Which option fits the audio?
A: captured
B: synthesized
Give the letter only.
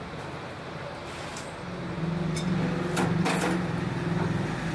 A